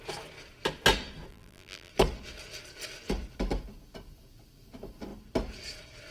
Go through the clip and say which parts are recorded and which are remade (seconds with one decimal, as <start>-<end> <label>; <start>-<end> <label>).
0.0-1.3 recorded; 1.3-1.9 remade; 1.9-6.1 recorded